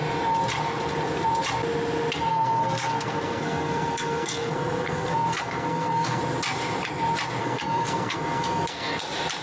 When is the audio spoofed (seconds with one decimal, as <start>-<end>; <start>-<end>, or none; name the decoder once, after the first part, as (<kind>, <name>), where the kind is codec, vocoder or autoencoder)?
2.3-6.2 (codec, SNAC); 7.4-9.0

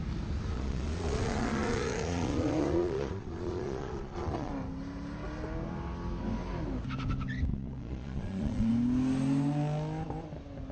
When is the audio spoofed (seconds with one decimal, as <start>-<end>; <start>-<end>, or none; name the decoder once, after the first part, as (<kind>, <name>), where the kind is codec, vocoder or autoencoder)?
0.5-4.5 (vocoder, Vocos); 7.5-8.7

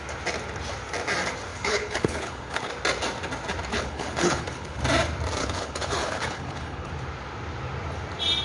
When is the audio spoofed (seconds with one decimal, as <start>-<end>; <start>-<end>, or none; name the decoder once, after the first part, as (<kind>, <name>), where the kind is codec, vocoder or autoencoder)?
1.5-2.7 (codec, HILCodec); 3.7-4.8; 5.4-6.9

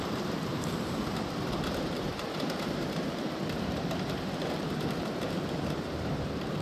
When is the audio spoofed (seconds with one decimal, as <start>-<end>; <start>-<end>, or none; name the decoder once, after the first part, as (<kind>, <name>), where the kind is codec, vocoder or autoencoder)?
0.0-6.6 (vocoder, BigVGAN v2)

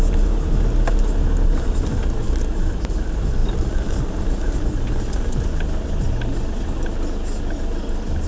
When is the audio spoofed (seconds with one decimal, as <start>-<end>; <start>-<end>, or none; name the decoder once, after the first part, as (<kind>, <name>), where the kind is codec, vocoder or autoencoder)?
none

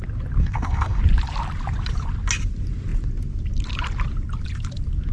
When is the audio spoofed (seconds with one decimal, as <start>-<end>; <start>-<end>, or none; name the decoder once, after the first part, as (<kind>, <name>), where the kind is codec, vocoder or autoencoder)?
0.4-1.0 (codec, SNAC)

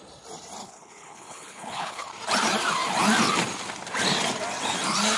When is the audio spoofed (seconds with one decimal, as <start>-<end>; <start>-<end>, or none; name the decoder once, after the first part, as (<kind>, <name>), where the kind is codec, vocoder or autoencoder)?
0.6-2.1 (codec, HILCodec)